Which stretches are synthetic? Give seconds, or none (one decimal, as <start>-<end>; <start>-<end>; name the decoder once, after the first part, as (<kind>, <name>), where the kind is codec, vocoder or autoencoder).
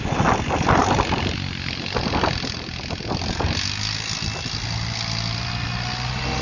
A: none